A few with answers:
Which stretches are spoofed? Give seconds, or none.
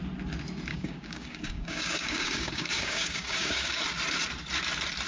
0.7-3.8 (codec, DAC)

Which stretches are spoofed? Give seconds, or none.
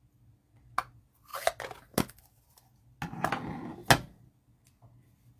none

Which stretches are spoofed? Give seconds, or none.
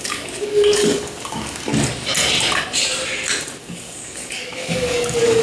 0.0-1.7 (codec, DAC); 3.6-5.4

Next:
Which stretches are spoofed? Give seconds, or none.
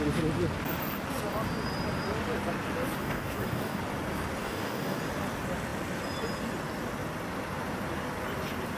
3.0-3.8 (codec, DAC); 4.4-5.0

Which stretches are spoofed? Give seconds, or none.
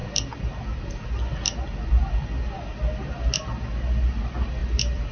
none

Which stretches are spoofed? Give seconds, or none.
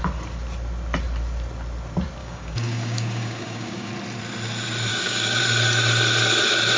2.2-3.9 (codec, DAC); 4.9-5.4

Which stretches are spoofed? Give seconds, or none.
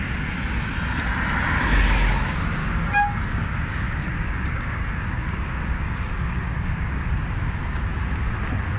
2.6-7.1 (codec, DAC)